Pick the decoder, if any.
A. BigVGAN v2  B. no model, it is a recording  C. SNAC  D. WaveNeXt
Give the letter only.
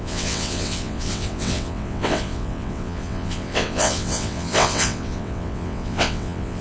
D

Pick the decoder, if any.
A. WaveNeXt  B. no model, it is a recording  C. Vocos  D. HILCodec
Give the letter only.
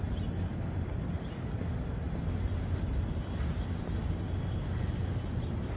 B